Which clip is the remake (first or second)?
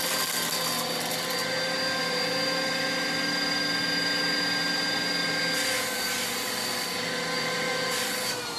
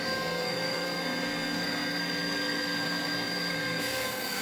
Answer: second